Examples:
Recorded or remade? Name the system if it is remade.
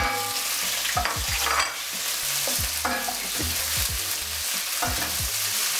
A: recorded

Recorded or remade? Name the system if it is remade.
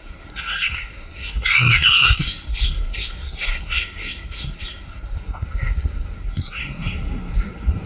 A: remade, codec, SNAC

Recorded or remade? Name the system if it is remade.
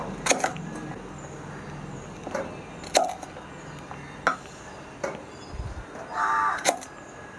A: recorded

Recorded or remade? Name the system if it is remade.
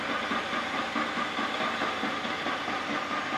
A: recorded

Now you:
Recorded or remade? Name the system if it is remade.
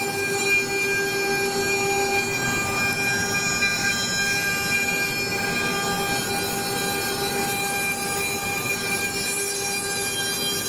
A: recorded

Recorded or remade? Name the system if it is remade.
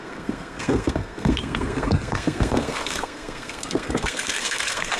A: remade, codec, SNAC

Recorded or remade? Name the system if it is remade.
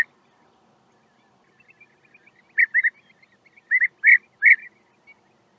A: recorded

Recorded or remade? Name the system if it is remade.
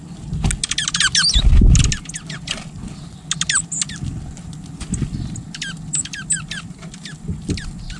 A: recorded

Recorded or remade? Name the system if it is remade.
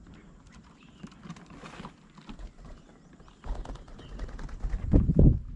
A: recorded